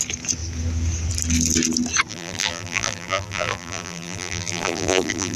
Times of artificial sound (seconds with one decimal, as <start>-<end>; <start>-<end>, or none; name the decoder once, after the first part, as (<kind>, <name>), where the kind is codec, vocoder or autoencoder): 2.1-5.4 (vocoder, BigVGAN v2)

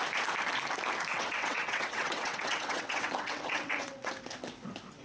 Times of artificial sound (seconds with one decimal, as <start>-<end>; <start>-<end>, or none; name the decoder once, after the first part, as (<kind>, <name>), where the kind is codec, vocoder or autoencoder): 1.1-4.1 (vocoder, WaveNeXt)